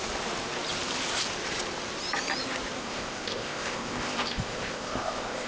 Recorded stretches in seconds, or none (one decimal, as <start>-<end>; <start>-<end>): 0.0-2.8